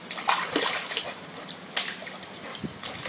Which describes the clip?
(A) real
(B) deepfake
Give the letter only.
A